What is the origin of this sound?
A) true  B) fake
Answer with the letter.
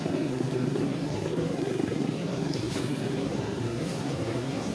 B